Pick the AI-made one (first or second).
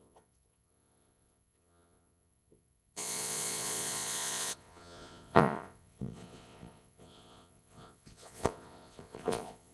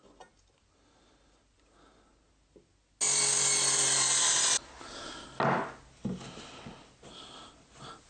first